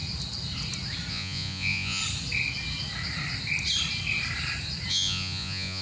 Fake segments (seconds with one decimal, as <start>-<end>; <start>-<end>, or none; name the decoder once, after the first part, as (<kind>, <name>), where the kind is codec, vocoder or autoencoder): 1.1-2.0 (vocoder, Vocos); 4.9-5.8